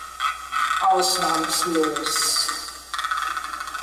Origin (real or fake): real